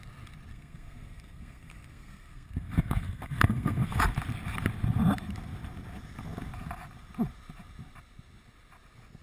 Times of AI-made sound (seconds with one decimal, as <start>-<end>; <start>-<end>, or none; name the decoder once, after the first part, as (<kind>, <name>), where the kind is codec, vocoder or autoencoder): 0.5-4.0 (codec, SNAC)